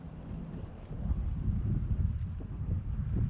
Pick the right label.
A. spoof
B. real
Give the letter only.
B